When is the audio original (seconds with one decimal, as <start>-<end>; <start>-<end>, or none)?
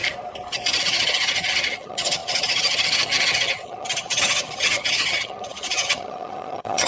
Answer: 0.0-0.8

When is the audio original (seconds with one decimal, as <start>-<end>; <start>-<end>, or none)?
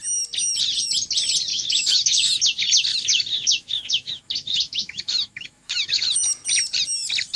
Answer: 0.0-1.5; 2.4-2.9; 6.2-7.4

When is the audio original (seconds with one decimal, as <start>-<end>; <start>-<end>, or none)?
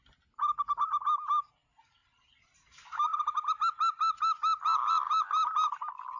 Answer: 0.0-6.2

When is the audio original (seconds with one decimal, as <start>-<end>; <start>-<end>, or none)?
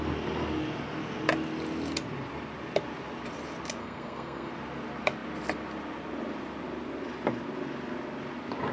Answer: 0.0-3.8; 4.5-8.7